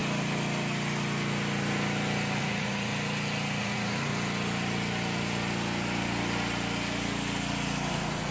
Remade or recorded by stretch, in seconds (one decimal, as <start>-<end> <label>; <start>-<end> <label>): 0.0-2.4 recorded; 2.4-2.9 remade; 2.9-3.6 recorded; 3.6-4.1 remade; 4.1-7.9 recorded; 7.9-8.3 remade